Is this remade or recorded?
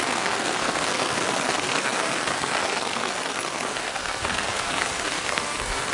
remade